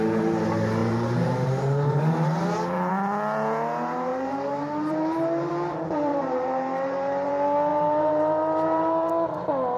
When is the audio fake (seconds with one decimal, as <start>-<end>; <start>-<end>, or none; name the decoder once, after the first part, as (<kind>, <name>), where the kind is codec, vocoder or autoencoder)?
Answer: 0.8-2.9 (vocoder, BigVGAN v2); 4.1-5.5; 6.1-7.3; 7.7-9.1

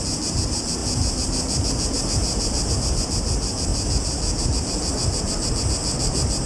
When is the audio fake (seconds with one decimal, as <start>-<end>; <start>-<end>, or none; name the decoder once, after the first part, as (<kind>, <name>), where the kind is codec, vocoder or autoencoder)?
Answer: none

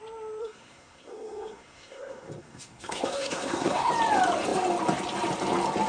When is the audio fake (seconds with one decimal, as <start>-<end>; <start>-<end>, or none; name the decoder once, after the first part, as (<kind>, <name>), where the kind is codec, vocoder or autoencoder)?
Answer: 0.4-3.9 (codec, SNAC)

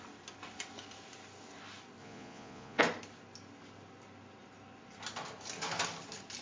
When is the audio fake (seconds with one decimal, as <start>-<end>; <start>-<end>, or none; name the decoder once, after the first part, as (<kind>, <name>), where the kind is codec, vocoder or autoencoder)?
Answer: 2.0-2.8 (vocoder, Vocos)

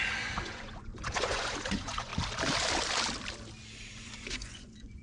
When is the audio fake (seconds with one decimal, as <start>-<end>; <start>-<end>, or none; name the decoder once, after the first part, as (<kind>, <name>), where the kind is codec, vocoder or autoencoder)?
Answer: 0.0-2.1 (vocoder, Vocos); 3.9-5.0

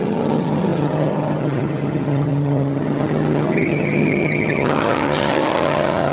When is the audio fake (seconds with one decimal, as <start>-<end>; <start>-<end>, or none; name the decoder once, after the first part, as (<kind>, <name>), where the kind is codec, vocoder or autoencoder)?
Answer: 0.0-6.1 (vocoder, HiFi-GAN)

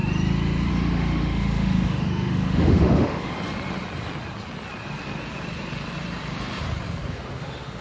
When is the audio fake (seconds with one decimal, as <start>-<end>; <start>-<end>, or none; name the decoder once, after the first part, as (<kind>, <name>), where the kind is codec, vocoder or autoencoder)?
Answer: 0.7-3.3 (autoencoder, DAC-VAE); 7.1-7.8